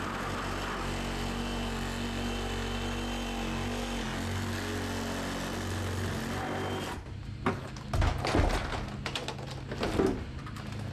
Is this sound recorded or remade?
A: recorded